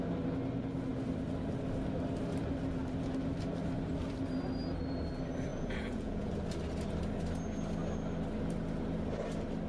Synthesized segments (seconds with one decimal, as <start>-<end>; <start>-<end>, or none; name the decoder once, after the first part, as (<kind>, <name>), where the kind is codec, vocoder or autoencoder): 5.5-6.3 (vocoder, Vocos)